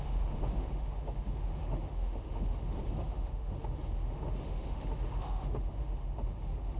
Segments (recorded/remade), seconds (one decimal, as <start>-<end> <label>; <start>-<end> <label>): 0.0-6.8 remade